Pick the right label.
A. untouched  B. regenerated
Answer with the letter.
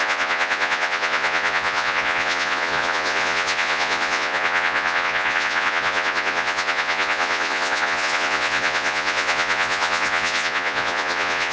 B